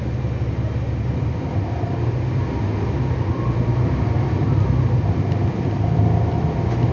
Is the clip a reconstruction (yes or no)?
no